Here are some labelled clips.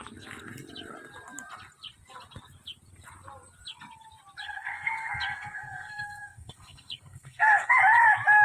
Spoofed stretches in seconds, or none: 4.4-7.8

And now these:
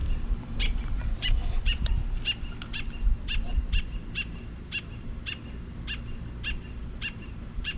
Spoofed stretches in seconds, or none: 0.0-2.0; 6.7-7.8

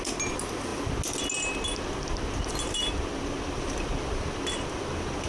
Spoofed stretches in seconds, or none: none

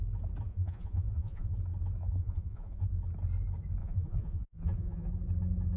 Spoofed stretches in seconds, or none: 0.5-1.5; 2.0-2.9; 3.8-5.1

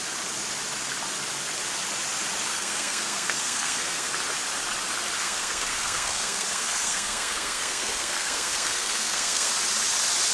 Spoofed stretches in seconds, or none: 2.5-4.1; 5.2-9.5

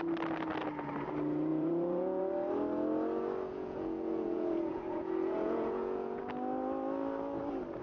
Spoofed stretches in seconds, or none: 1.5-2.2; 3.5-6.2